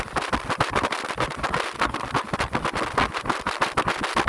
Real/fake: real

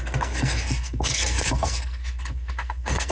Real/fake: fake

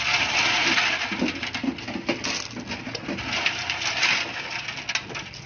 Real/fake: real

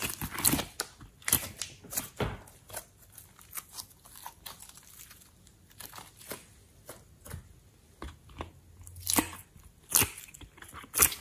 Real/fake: real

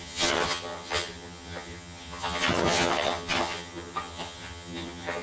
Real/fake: fake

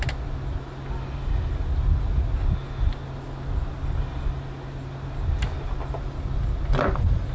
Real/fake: real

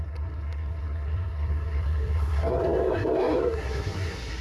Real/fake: fake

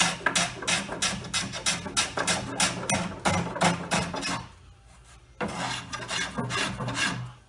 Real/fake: real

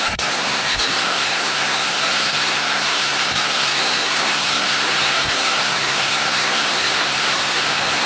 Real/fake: fake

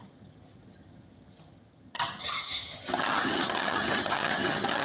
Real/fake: fake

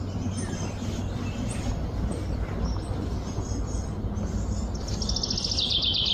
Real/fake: real